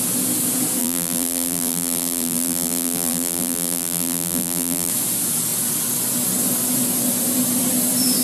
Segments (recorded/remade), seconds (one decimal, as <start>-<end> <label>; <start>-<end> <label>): 0.0-0.8 recorded; 0.8-4.9 remade; 4.9-8.2 recorded